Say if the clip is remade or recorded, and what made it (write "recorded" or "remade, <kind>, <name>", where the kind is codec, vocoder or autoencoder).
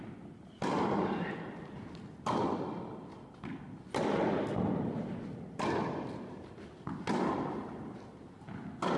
recorded